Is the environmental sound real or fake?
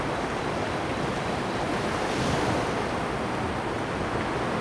real